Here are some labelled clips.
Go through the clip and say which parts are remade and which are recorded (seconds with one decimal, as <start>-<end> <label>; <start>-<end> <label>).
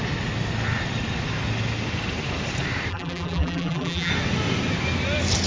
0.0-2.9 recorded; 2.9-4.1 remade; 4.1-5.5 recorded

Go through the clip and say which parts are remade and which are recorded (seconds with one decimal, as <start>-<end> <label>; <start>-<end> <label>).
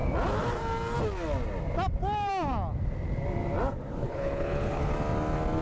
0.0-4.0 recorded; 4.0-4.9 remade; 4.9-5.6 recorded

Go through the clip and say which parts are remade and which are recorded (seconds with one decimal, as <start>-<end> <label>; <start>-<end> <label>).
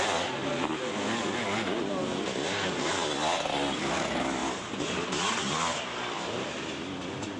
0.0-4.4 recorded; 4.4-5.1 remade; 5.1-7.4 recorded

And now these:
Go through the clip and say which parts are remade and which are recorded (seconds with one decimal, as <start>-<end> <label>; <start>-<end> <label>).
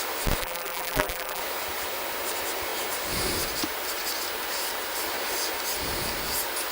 0.0-0.4 recorded; 0.4-1.4 remade; 1.4-6.7 recorded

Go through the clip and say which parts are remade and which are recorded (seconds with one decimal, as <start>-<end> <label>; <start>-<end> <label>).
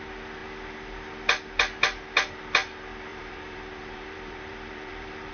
0.0-3.1 recorded; 3.1-5.3 remade